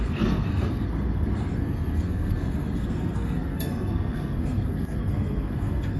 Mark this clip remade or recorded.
remade